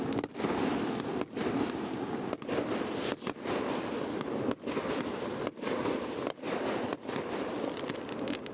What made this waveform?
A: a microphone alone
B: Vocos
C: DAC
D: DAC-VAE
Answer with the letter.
A